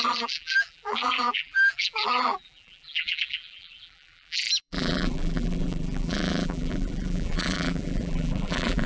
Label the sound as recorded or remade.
remade